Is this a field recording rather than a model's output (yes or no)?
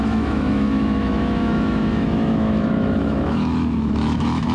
no